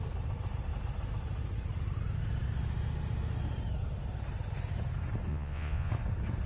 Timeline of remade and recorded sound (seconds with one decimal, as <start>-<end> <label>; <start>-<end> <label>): 0.0-5.3 recorded; 5.3-5.9 remade; 5.9-6.5 recorded